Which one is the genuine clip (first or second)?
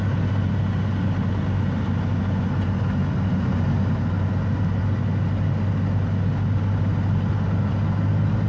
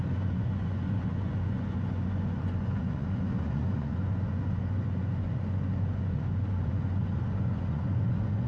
first